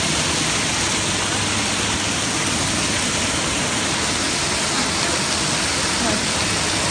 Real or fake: real